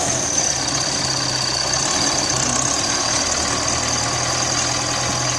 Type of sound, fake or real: real